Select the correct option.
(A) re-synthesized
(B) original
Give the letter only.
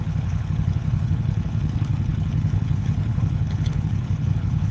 A